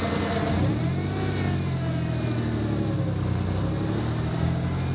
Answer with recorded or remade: recorded